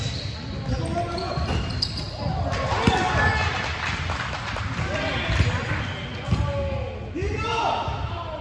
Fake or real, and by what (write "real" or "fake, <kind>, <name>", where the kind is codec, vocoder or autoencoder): real